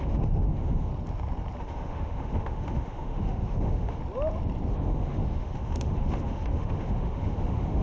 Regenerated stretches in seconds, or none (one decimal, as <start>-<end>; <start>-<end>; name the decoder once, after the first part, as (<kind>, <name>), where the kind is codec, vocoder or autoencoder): 0.0-0.9 (autoencoder, DAC-VAE); 1.6-4.0; 4.7-7.8